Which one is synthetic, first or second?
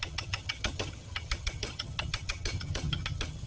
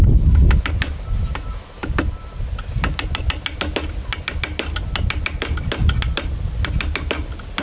first